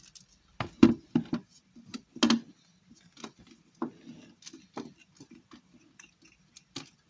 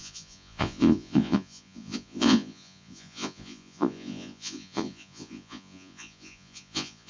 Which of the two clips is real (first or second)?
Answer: first